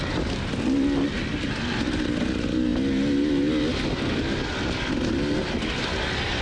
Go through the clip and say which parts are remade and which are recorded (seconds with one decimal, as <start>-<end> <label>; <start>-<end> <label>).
0.0-6.4 recorded